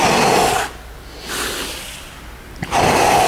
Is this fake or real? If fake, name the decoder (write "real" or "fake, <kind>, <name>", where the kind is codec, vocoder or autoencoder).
real